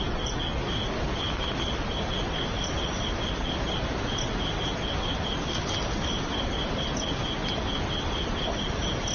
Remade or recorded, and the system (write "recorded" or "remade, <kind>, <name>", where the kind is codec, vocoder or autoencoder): recorded